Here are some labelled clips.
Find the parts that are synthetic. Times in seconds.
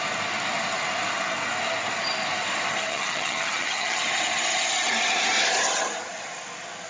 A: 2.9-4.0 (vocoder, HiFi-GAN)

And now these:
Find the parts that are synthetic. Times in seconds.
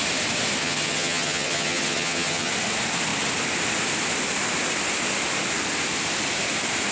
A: 0.6-2.5 (vocoder, HiFi-GAN)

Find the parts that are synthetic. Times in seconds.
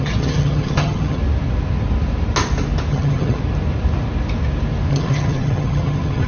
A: 0.0-1.2 (vocoder, HiFi-GAN); 2.9-3.4; 4.9-6.3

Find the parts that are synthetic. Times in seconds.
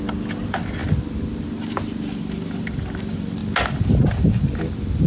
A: none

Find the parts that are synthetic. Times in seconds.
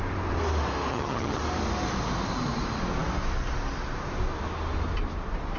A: 0.9-1.4 (vocoder, HiFi-GAN)